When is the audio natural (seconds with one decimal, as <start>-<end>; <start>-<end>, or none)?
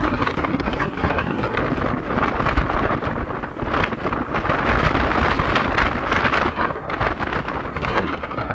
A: 1.6-6.5; 6.9-7.7